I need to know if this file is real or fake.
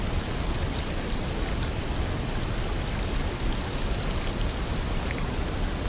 real